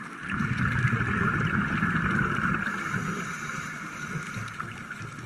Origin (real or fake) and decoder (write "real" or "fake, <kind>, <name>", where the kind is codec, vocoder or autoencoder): real